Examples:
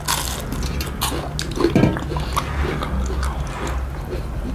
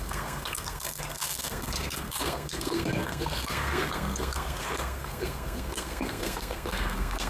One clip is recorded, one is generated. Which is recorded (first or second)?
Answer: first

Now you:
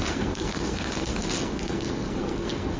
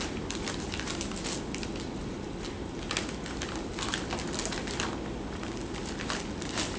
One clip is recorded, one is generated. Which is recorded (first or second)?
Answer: second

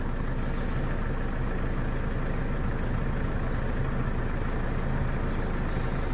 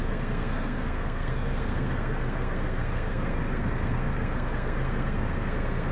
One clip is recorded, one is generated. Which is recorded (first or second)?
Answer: first